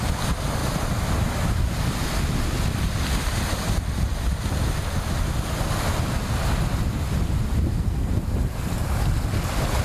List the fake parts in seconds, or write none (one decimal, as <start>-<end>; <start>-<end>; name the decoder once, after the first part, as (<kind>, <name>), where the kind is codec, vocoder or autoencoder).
7.7-8.2 (codec, SNAC)